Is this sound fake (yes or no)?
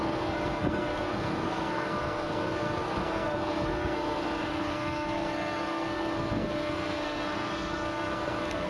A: yes